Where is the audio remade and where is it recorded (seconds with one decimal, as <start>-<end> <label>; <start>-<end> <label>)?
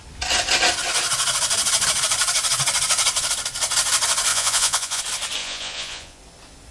0.0-4.3 recorded; 4.3-5.0 remade; 5.0-5.4 recorded; 5.4-6.2 remade; 6.2-6.7 recorded